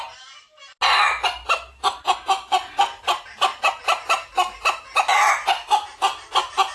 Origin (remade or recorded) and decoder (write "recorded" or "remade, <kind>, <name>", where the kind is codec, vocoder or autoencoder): recorded